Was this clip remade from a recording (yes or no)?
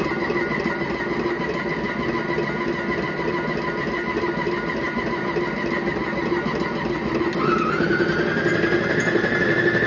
no